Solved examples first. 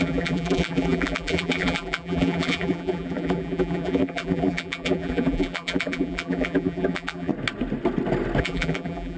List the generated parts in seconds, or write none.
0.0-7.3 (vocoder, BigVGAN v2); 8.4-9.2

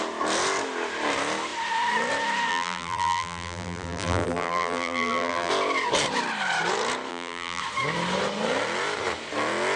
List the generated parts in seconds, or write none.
2.5-5.5 (vocoder, BigVGAN v2); 7.1-7.6

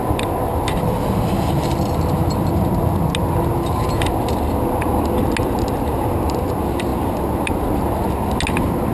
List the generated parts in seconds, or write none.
none

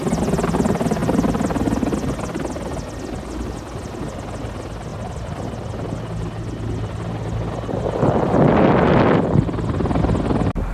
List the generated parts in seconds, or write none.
none

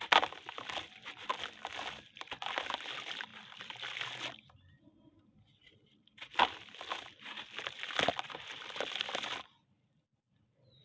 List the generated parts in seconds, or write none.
none

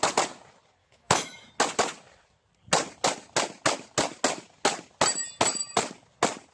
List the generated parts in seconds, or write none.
0.8-1.5 (autoencoder, DAC-VAE)

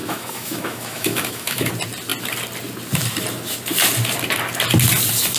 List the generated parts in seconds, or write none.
0.0-1.7 (autoencoder, DAC-VAE)

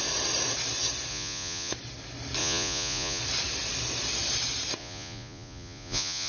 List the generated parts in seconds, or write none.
1.1-1.7 (vocoder, Vocos); 2.4-3.2; 4.8-6.3